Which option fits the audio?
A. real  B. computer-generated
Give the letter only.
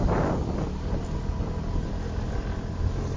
A